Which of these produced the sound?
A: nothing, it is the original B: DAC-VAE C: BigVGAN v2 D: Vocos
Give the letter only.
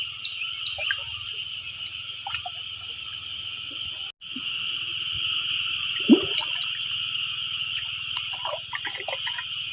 A